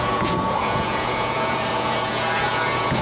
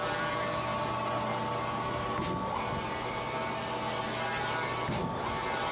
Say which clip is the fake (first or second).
first